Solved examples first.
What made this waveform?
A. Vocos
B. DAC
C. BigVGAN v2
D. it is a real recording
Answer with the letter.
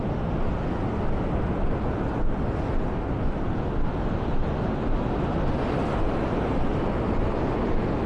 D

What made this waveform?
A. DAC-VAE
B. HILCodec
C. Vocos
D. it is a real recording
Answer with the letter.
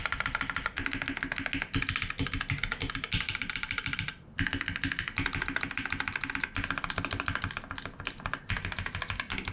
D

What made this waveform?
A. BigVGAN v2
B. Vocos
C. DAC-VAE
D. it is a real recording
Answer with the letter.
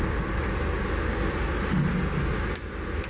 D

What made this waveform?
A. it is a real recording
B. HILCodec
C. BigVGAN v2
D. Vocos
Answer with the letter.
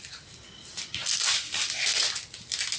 A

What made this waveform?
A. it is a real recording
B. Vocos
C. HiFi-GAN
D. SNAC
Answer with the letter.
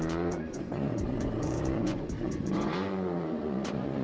B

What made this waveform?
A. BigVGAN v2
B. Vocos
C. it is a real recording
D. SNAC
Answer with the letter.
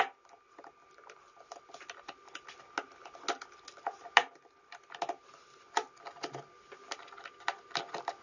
C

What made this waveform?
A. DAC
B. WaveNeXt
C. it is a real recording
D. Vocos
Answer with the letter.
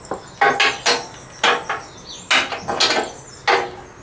C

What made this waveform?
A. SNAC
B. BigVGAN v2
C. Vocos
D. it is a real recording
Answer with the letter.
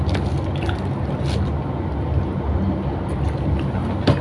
D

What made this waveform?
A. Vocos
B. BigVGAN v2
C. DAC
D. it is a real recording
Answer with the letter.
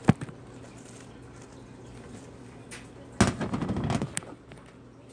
D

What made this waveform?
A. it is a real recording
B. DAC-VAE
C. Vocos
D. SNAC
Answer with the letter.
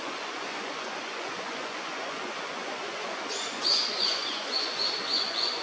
C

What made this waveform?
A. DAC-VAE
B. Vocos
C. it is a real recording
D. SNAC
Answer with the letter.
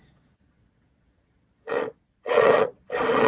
B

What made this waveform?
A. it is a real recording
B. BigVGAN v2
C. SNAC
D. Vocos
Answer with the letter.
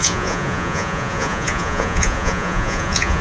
D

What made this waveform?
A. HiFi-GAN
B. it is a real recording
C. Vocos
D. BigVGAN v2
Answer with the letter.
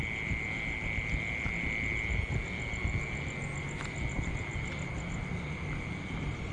B